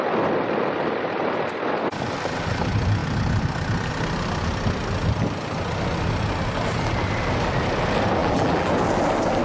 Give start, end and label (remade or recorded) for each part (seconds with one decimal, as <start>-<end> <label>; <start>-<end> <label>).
0.0-8.2 recorded; 8.2-8.7 remade; 8.7-9.4 recorded